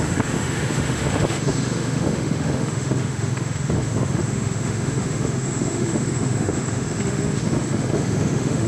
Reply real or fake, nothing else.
fake